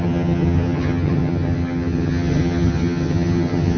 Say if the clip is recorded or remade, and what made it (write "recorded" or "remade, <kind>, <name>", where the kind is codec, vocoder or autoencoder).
remade, vocoder, HiFi-GAN